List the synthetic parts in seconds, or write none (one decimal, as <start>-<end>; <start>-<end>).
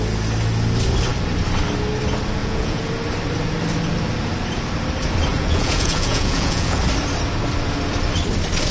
2.4-2.9; 5.3-6.8